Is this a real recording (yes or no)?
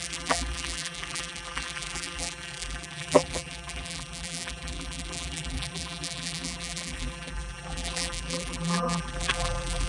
no